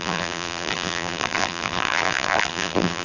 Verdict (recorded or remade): remade